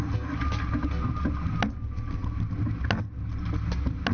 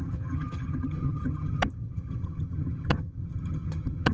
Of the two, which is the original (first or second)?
first